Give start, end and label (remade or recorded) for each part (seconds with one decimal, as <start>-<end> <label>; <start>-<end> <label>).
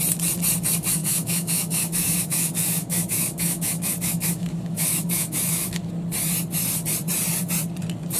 0.0-1.0 recorded; 1.0-5.9 remade; 5.9-8.2 recorded